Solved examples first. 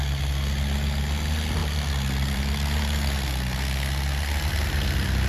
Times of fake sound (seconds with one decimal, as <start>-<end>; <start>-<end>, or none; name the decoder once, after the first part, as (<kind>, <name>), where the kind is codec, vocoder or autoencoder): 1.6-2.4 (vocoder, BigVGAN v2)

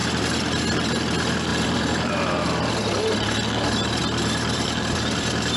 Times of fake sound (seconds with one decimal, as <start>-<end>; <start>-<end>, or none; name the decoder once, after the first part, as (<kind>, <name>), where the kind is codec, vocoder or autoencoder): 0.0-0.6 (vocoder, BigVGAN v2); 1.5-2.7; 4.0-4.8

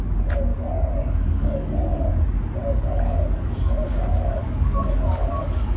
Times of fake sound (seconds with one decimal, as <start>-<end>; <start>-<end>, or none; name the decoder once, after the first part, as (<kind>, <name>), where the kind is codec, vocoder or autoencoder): 0.5-2.1 (codec, DAC); 2.6-5.8

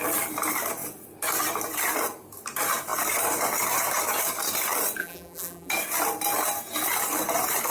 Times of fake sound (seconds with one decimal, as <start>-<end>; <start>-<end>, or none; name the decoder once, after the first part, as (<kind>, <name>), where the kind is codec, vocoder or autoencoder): 5.0-5.7 (vocoder, BigVGAN v2)